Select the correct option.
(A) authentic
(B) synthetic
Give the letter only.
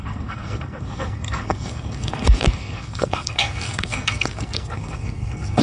B